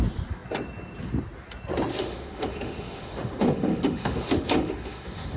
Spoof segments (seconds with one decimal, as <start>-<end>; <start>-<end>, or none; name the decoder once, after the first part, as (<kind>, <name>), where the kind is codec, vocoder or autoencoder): 1.9-5.4 (autoencoder, DAC-VAE)